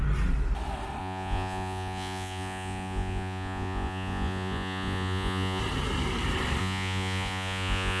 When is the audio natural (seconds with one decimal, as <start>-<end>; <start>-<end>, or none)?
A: 0.0-1.0; 5.6-6.6